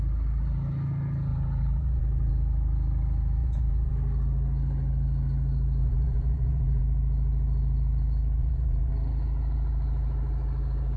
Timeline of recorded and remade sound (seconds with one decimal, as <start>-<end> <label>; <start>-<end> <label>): 0.0-1.3 recorded; 1.3-2.3 remade; 2.3-3.4 recorded; 3.4-3.9 remade; 3.9-5.8 recorded; 5.8-6.8 remade; 6.8-8.4 recorded; 8.4-8.9 remade; 8.9-11.0 recorded